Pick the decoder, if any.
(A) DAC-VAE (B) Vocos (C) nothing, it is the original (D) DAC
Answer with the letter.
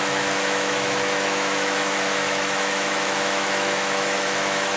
A